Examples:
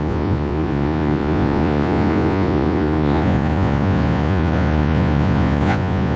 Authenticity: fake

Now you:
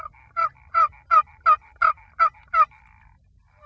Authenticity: real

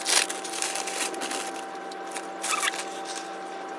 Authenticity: real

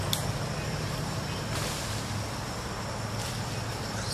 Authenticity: real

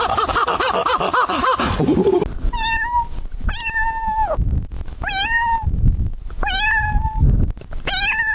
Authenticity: real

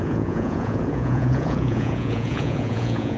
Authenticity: fake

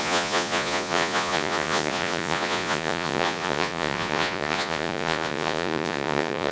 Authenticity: fake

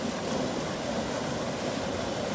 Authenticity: real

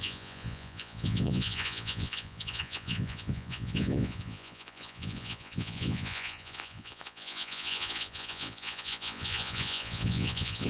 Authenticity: fake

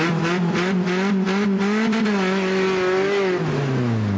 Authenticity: real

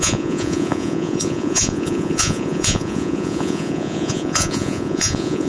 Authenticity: fake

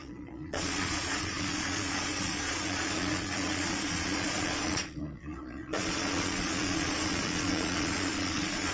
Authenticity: fake